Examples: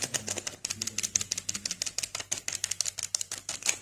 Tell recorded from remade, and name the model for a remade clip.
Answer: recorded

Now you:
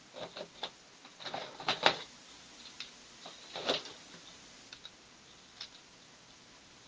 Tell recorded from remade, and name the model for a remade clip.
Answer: recorded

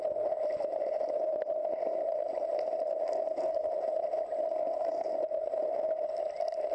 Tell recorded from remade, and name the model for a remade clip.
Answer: recorded